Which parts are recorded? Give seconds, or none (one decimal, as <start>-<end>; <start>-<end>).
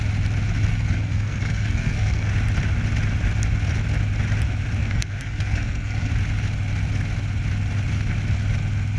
0.0-0.7; 2.3-4.8; 6.1-9.0